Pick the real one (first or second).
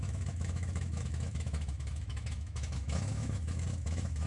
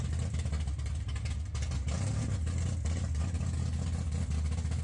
second